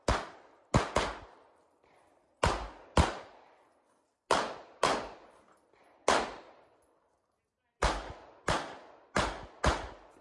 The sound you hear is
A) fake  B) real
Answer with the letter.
B